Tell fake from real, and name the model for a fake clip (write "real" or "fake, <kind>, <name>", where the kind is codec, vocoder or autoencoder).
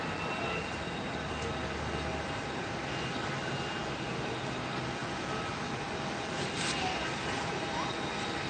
real